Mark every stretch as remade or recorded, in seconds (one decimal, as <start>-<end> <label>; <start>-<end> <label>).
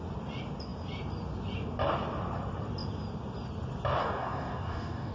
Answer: 0.0-4.0 recorded; 4.0-5.1 remade